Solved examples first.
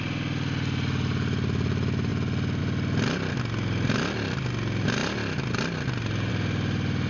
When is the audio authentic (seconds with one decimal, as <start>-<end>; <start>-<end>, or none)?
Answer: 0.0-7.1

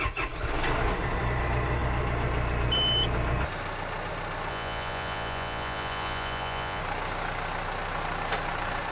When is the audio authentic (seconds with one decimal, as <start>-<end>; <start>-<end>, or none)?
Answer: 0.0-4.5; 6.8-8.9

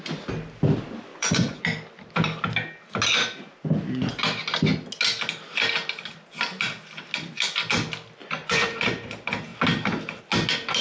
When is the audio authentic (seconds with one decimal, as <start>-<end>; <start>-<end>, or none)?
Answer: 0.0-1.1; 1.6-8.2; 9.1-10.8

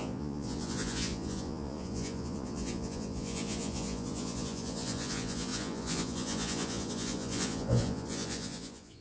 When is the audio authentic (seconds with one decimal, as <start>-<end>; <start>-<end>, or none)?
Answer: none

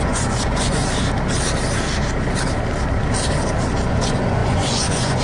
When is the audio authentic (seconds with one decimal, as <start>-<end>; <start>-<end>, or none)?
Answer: 0.8-3.9

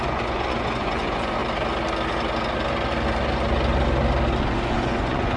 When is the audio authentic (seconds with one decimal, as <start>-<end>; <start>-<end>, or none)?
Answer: 1.4-4.4